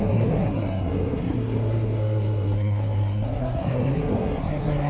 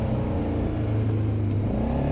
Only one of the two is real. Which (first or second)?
second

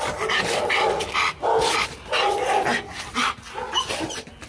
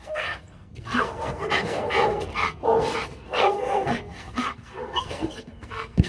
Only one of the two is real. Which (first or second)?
first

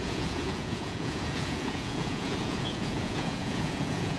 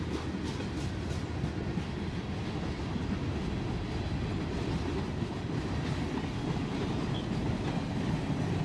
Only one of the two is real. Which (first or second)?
second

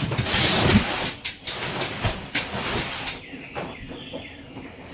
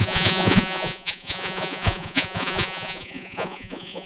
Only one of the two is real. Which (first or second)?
first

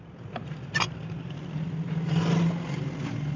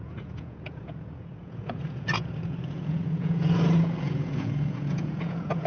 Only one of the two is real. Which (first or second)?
first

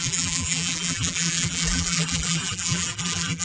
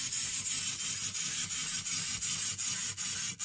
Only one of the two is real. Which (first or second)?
second